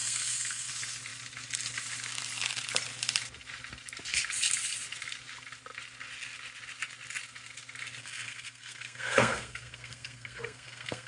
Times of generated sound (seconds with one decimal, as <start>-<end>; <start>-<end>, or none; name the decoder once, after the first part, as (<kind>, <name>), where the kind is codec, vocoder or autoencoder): 0.0-0.7 (codec, SNAC); 8.0-11.1